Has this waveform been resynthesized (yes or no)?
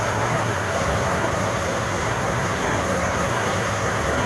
yes